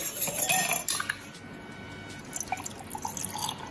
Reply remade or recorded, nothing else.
recorded